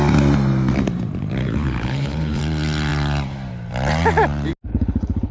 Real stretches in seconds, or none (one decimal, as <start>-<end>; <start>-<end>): 0.0-1.4; 2.4-4.7